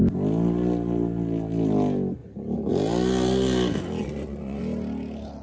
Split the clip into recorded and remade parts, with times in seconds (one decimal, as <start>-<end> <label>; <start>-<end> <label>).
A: 0.0-4.0 recorded; 4.0-4.6 remade; 4.6-5.4 recorded